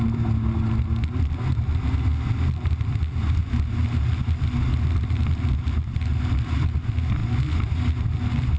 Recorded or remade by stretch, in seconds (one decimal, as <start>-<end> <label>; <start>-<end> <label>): 0.0-8.6 recorded

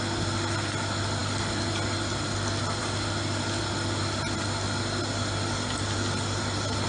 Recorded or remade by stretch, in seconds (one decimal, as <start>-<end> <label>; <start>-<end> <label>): 0.0-6.9 recorded

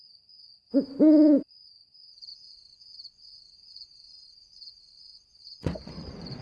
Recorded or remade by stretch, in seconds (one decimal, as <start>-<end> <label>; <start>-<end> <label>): 0.0-2.3 recorded; 2.3-6.4 remade